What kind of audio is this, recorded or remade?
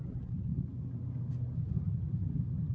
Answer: recorded